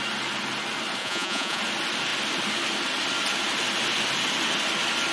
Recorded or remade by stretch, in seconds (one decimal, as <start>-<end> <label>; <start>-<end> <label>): 0.0-1.0 recorded; 1.0-1.6 remade; 1.6-5.1 recorded